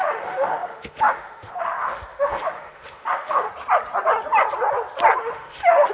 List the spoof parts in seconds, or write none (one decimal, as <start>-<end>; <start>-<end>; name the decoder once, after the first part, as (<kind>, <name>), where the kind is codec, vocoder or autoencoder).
0.0-3.5 (autoencoder, DAC-VAE); 5.2-5.9